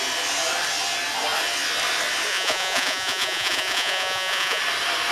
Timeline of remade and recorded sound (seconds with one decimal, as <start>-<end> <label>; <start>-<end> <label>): 0.0-2.3 recorded; 2.3-4.6 remade; 4.6-5.1 recorded